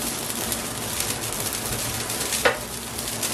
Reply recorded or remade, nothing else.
recorded